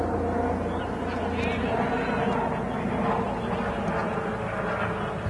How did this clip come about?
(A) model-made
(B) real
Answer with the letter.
B